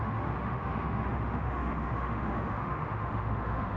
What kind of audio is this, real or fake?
fake